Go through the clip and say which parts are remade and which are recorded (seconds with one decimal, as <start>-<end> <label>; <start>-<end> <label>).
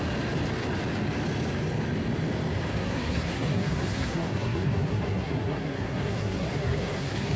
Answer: 0.0-2.8 recorded; 2.8-7.4 remade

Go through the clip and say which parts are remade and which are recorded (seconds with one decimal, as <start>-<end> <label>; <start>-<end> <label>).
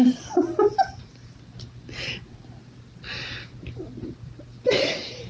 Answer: 0.0-5.3 recorded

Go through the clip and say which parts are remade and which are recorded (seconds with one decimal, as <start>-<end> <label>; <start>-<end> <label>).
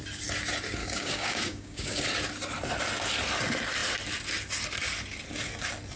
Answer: 0.0-0.8 recorded; 0.8-2.0 remade; 2.0-6.0 recorded